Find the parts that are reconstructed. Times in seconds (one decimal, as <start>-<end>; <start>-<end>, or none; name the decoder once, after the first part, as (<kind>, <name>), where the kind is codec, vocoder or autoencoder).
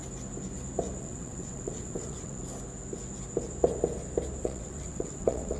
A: 1.0-2.4 (vocoder, WaveNeXt); 4.4-5.6